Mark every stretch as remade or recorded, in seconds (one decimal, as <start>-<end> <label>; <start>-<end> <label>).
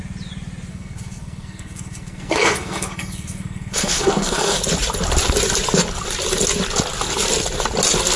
0.0-0.7 recorded; 0.7-4.6 remade; 4.6-8.2 recorded